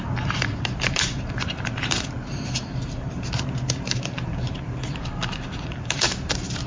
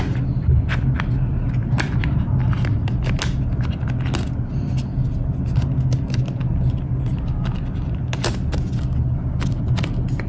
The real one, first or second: second